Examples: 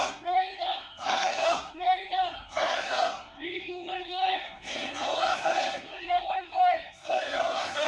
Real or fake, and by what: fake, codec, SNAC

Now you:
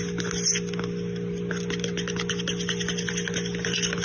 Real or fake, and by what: real